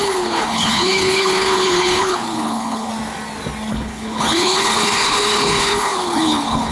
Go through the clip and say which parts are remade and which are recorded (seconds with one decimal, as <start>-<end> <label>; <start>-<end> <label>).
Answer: 0.0-2.9 remade; 2.9-3.7 recorded; 3.7-6.7 remade